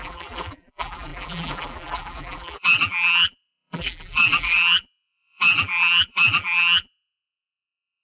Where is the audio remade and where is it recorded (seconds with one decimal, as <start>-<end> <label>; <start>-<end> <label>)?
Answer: 0.0-8.0 remade